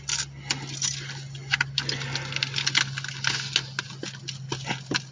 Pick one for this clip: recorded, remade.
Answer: recorded